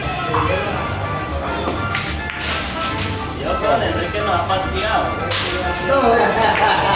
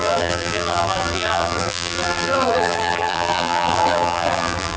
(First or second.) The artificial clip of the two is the second